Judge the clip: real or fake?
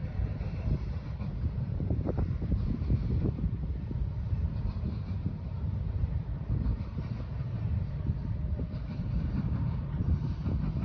fake